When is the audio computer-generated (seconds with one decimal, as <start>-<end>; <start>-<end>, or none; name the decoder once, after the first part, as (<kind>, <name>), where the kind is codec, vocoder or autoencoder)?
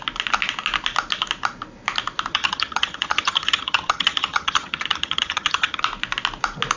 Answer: 2.3-5.8 (vocoder, HiFi-GAN)